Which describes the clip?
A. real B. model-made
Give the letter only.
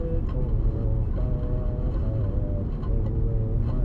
A